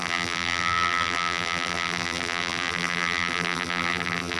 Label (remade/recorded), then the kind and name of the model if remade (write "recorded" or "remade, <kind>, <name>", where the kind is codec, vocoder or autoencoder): remade, vocoder, BigVGAN v2